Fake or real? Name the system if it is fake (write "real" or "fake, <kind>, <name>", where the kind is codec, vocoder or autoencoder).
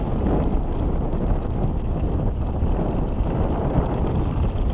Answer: real